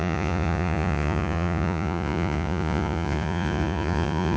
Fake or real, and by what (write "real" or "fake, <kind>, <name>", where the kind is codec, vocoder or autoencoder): fake, vocoder, Vocos